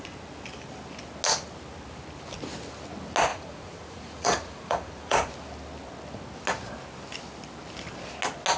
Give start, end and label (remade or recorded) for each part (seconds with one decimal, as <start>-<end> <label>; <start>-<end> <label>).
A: 0.0-3.3 recorded; 3.3-5.3 remade; 5.3-8.6 recorded